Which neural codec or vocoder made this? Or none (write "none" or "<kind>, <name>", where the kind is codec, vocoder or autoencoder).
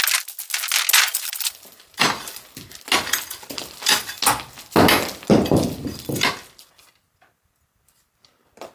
none